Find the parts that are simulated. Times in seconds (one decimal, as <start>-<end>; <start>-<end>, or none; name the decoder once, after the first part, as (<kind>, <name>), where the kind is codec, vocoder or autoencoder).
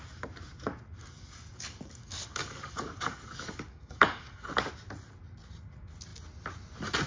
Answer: 1.0-4.7 (codec, DAC)